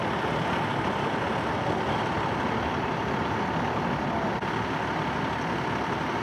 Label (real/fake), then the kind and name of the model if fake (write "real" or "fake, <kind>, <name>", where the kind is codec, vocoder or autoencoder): real